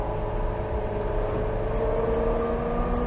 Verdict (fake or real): real